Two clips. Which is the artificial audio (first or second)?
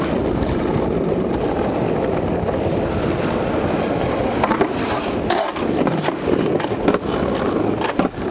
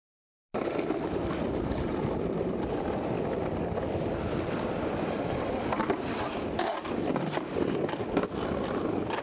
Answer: second